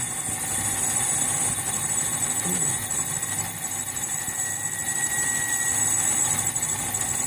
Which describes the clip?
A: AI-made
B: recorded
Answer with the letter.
B